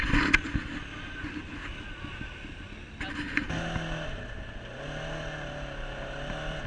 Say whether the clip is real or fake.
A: real